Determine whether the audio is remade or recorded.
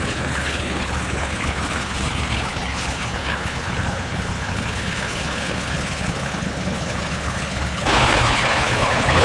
remade